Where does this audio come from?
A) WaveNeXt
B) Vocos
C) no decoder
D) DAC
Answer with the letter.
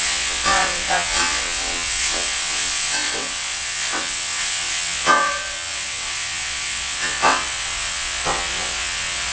A